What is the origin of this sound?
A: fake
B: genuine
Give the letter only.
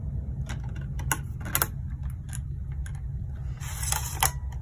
B